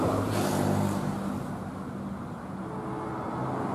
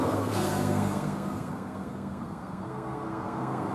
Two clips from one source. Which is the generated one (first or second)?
second